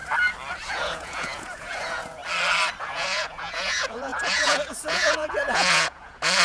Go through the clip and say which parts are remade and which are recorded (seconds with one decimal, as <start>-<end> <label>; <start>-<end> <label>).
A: 0.0-0.7 recorded; 0.7-2.2 remade; 2.2-2.8 recorded; 2.8-6.4 remade